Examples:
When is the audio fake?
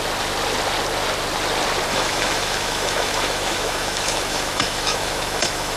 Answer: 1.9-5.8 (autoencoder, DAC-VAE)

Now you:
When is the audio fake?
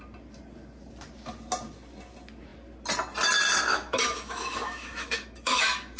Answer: 3.7-6.0 (autoencoder, DAC-VAE)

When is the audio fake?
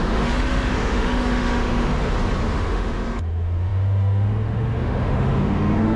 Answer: 0.0-1.9 (autoencoder, DAC-VAE); 2.5-6.0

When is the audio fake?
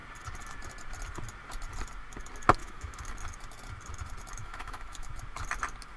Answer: 2.6-3.1 (autoencoder, DAC-VAE); 4.4-5.1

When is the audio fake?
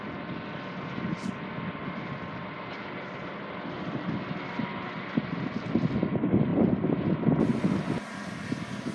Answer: none